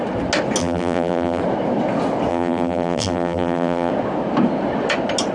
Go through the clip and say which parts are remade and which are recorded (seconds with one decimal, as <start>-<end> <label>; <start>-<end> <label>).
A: 0.0-0.6 recorded; 0.6-1.4 remade; 1.4-2.3 recorded; 2.3-3.9 remade; 3.9-5.3 recorded